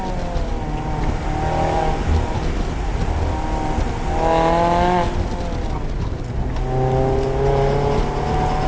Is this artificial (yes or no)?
no